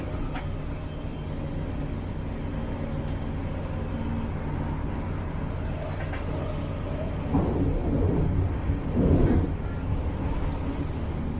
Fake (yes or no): no